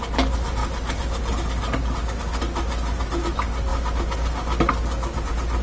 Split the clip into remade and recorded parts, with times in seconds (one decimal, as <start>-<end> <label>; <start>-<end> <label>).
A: 0.0-5.6 recorded